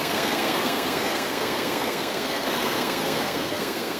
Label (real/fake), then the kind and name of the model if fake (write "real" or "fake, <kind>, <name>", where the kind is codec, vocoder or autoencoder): fake, codec, SNAC